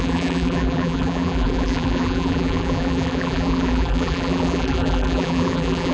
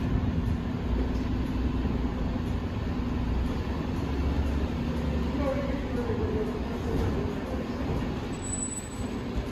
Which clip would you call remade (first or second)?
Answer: first